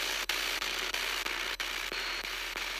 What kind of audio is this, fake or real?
real